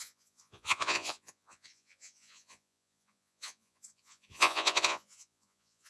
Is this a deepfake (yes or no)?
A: yes